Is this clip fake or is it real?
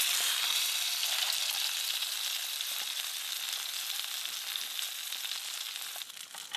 real